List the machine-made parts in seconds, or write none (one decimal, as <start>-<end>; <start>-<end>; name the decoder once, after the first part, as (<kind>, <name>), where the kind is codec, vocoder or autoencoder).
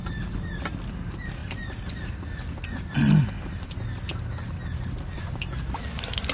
none